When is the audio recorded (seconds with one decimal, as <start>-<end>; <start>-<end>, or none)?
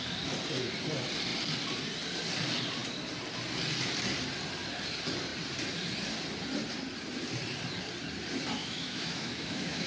0.0-8.6